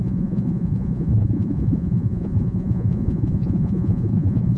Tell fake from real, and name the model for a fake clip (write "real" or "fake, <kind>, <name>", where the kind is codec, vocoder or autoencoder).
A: fake, vocoder, Vocos